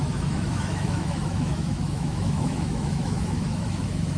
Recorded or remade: remade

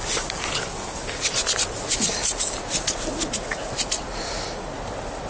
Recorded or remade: recorded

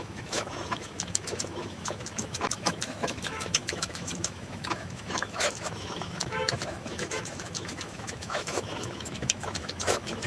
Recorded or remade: remade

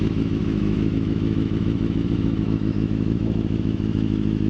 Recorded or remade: remade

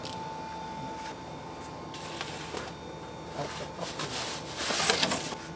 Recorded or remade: recorded